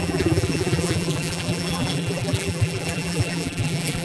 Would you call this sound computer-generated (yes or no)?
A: yes